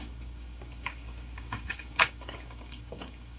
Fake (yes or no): yes